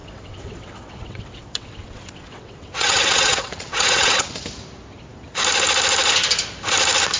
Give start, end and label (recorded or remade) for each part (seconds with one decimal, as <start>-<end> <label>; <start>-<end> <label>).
0.0-4.3 remade; 4.3-7.2 recorded